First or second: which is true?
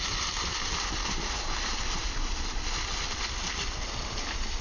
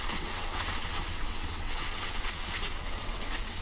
first